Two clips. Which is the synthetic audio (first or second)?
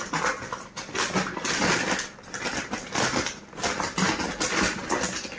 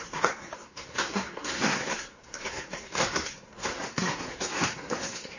second